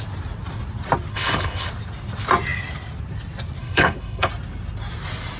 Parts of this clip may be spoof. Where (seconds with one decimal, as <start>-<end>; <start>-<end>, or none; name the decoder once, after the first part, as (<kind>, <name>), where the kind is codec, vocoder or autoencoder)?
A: 1.1-1.7 (codec, HILCodec); 3.6-4.3